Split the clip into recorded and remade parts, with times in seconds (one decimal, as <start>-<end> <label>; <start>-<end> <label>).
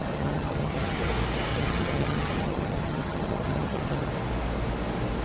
0.0-1.1 remade; 1.1-1.5 recorded; 1.5-4.1 remade; 4.1-5.2 recorded